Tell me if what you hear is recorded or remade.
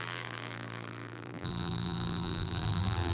remade